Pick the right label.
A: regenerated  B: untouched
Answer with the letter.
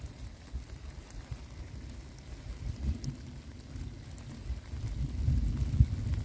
B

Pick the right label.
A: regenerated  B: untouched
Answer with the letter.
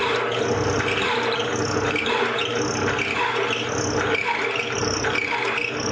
B